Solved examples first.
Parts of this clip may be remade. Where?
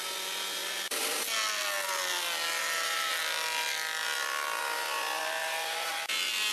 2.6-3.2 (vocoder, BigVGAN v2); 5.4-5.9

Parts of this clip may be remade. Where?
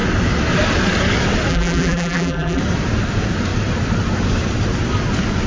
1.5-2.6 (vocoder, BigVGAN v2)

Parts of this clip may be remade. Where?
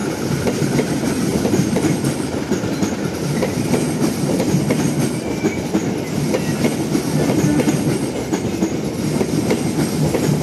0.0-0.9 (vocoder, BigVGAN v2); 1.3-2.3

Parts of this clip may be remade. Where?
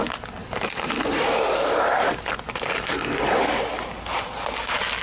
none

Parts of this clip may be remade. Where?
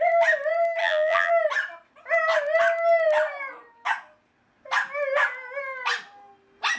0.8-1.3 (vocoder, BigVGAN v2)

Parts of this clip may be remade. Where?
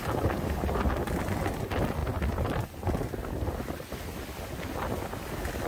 none